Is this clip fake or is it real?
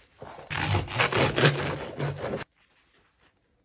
real